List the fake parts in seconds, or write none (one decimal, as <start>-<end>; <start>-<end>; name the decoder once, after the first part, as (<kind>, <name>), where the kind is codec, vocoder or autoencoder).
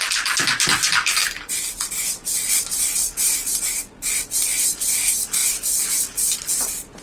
5.4-6.0 (vocoder, BigVGAN v2)